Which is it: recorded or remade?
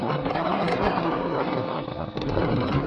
remade